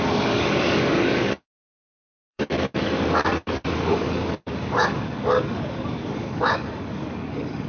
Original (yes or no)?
no